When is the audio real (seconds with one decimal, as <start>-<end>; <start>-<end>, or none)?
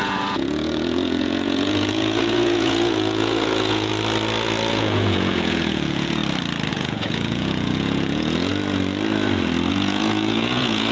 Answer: 3.9-4.7; 6.2-6.7; 8.5-9.7